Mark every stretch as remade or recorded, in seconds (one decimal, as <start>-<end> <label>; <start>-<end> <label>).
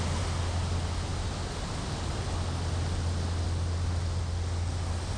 0.0-5.2 recorded